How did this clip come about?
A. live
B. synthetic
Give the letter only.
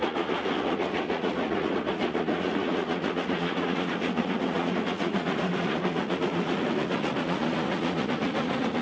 B